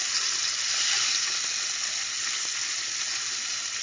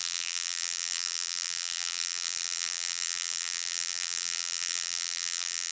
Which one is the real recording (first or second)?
first